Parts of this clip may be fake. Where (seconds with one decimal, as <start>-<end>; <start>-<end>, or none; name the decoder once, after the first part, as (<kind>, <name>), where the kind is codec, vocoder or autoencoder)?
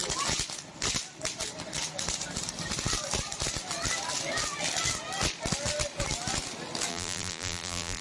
6.9-8.0 (vocoder, BigVGAN v2)